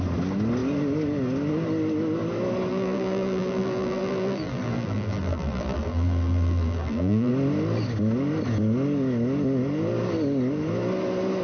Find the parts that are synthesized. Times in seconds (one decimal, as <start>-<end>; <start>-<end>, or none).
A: 2.7-7.3